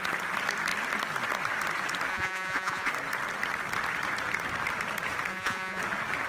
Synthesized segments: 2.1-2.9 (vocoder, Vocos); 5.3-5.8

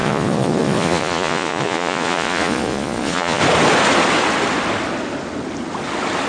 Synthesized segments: 0.0-3.4 (vocoder, Vocos)